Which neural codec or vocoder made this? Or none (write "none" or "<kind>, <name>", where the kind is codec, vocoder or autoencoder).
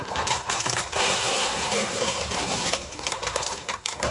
codec, SNAC